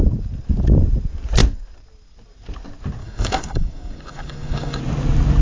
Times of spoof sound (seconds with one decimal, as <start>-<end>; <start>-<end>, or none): 3.0-4.8